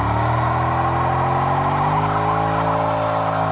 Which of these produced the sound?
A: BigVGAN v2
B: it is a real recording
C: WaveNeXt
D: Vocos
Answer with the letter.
B